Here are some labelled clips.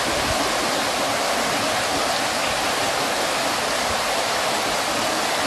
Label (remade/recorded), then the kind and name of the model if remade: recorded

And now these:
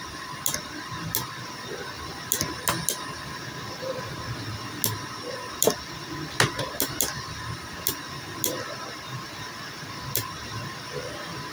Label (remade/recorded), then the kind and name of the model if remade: recorded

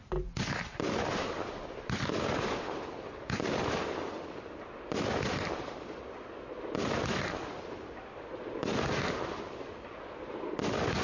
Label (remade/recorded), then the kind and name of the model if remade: recorded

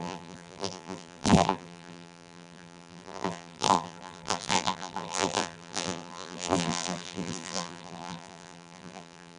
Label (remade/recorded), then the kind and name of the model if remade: remade, vocoder, BigVGAN v2